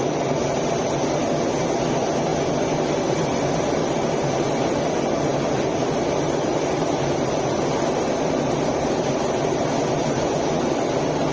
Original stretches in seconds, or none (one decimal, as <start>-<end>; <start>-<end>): 0.0-11.3